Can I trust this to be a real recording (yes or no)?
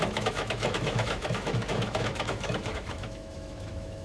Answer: no